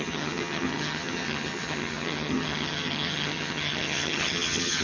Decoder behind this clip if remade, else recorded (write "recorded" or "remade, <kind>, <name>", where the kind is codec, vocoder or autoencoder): remade, vocoder, HiFi-GAN